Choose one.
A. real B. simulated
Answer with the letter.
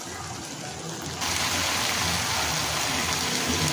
A